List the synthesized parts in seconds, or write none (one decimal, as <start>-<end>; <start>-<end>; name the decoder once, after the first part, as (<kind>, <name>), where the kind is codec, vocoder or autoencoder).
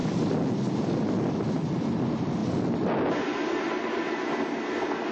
none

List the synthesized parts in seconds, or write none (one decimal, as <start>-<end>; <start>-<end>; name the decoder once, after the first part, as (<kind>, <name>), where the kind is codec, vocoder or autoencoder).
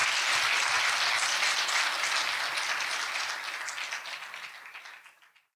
none